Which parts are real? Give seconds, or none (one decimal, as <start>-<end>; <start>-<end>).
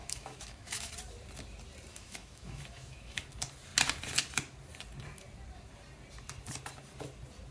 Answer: 0.9-1.9; 3.2-7.5